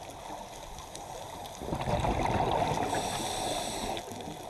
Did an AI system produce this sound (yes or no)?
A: no